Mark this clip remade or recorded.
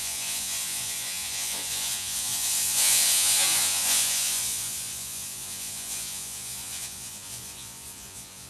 remade